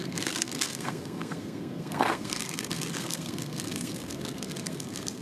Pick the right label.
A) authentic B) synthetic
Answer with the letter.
B